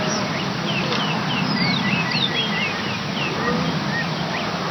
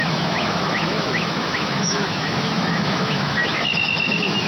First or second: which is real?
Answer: first